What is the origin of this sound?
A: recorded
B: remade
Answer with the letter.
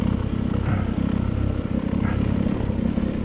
A